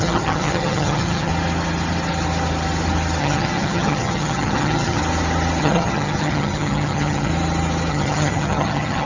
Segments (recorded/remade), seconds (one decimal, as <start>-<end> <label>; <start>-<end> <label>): 0.0-1.3 remade; 1.3-3.2 recorded; 3.2-5.0 remade; 5.0-5.6 recorded; 5.6-7.3 remade; 7.3-7.9 recorded; 7.9-9.1 remade

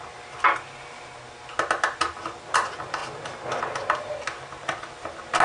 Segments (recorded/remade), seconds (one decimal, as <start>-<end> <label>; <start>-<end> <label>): 0.0-5.4 recorded

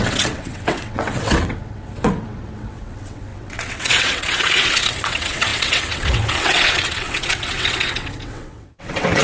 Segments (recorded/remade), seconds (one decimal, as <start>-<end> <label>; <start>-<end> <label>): 0.0-9.2 remade

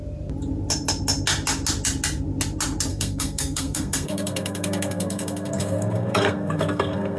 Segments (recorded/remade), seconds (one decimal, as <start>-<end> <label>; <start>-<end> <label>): 0.0-2.9 recorded; 2.9-7.2 remade